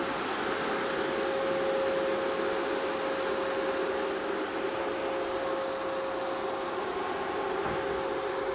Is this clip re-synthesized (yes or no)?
no